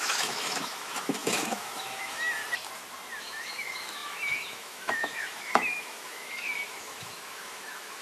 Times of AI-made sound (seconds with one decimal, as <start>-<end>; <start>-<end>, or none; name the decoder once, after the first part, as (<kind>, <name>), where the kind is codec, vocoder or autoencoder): 0.0-2.4 (autoencoder, DAC-VAE); 3.2-8.0